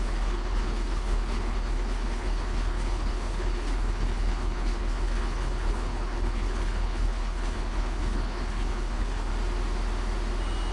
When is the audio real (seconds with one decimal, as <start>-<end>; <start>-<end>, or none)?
9.3-10.7